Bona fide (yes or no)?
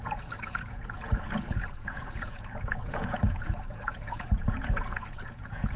no